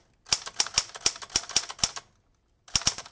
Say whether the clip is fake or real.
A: real